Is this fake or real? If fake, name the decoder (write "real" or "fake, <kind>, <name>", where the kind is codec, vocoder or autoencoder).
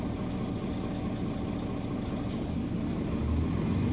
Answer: real